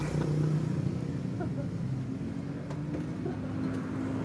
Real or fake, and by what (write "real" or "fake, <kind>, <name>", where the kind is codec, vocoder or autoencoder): real